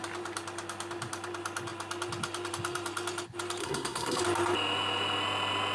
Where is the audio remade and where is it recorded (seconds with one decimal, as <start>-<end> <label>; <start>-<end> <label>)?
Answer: 0.0-3.6 recorded; 3.6-4.2 remade; 4.2-5.7 recorded